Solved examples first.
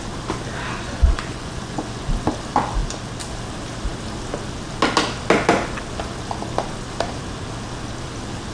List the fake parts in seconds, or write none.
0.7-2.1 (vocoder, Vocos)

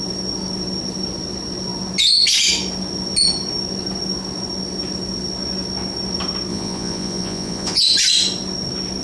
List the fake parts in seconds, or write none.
6.5-7.8 (vocoder, Vocos)

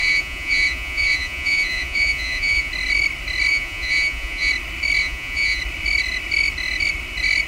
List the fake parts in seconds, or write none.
0.0-2.7 (vocoder, Vocos); 3.5-4.5; 5.0-5.6

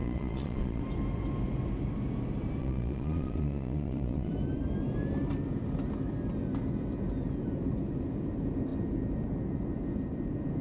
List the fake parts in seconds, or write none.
0.0-0.8 (vocoder, Vocos); 2.6-4.3